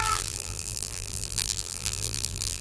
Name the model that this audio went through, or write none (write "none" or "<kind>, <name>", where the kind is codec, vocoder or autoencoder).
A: vocoder, BigVGAN v2